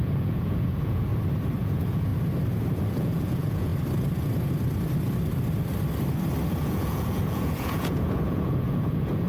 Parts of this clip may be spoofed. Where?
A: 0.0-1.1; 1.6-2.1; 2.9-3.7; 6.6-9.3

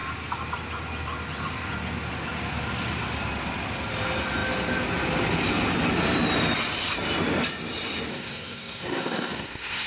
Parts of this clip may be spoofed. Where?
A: 8.1-9.9

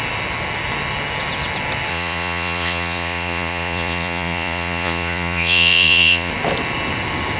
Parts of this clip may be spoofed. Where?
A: 1.9-6.3

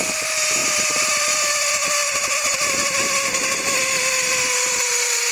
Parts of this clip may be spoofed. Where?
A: 0.6-3.8; 4.3-5.3

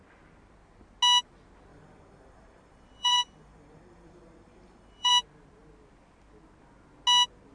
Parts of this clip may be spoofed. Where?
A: 1.7-5.1

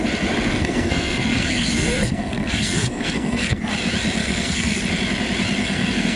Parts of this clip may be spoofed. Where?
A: 0.5-3.6; 4.2-4.8; 5.6-6.2